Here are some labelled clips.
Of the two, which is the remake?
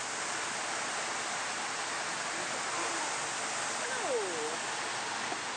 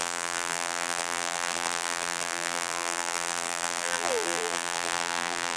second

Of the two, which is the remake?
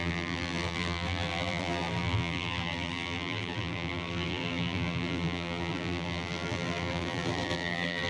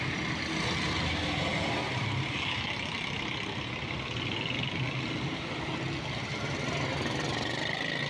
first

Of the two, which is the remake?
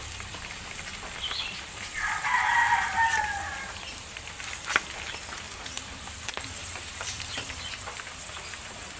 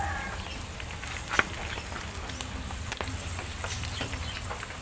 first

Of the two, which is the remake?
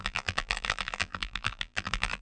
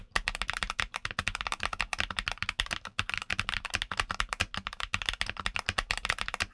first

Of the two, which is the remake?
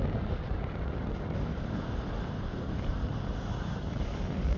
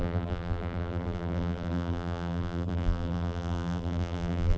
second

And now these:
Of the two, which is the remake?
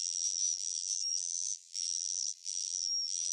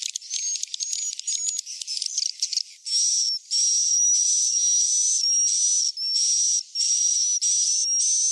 first